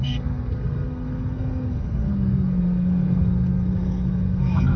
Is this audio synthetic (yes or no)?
yes